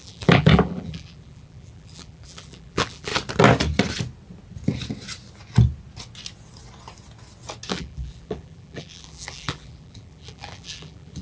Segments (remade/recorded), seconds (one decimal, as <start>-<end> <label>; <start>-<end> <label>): 0.0-3.1 remade; 3.1-7.7 recorded; 7.7-11.2 remade